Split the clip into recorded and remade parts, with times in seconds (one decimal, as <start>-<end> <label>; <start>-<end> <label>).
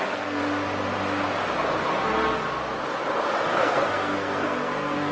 0.0-0.4 remade; 0.4-3.5 recorded; 3.5-5.1 remade